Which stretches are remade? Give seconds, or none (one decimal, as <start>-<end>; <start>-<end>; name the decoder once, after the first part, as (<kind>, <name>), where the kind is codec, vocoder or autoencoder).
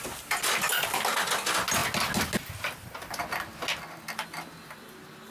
none